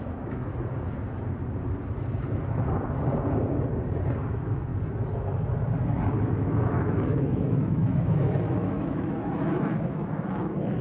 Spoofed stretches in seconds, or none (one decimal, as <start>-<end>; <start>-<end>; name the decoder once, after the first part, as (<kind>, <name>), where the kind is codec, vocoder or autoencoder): 0.0-0.5 (autoencoder, DAC-VAE); 4.3-4.7; 6.2-10.8